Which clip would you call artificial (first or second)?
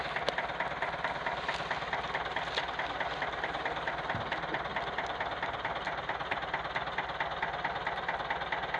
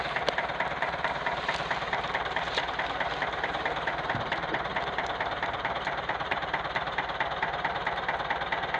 second